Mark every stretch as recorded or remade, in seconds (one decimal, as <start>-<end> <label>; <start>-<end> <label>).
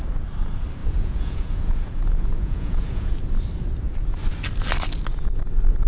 0.0-0.8 recorded; 0.8-3.1 remade; 3.1-5.9 recorded